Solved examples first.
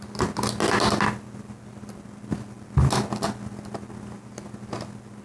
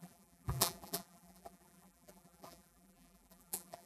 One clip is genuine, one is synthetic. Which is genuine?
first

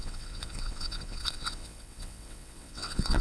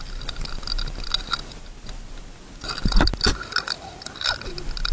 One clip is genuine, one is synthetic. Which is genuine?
second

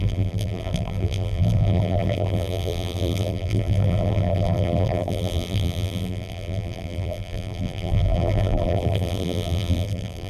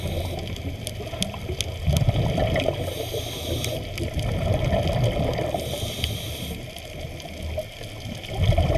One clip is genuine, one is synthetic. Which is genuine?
second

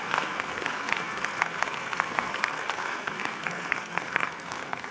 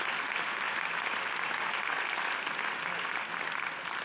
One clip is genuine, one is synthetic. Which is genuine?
second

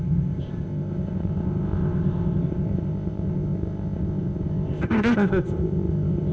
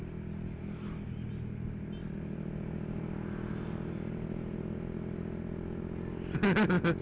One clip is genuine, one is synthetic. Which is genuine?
second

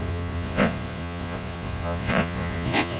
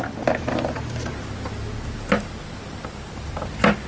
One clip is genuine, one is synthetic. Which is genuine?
second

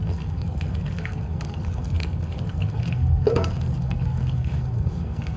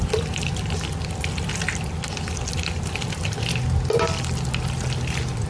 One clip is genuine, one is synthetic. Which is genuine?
second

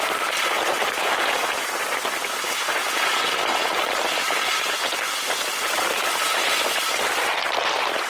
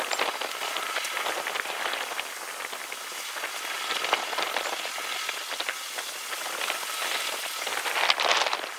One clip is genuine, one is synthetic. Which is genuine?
second